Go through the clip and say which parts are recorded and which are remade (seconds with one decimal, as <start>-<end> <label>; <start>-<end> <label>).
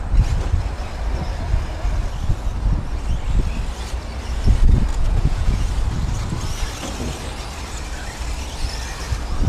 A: 0.0-4.9 recorded; 4.9-5.7 remade; 5.7-9.5 recorded